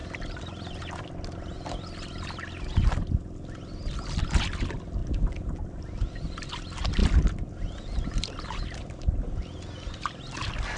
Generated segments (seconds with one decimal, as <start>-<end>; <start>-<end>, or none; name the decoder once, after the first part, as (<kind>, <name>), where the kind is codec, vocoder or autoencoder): 0.0-1.0 (vocoder, BigVGAN v2)